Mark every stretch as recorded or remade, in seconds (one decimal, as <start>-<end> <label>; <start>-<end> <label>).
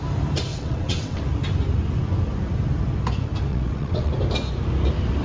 0.0-0.5 recorded; 0.5-1.2 remade; 1.2-3.5 recorded; 3.5-4.1 remade; 4.1-5.2 recorded